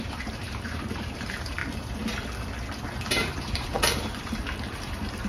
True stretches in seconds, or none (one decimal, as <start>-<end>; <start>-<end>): 1.6-3.1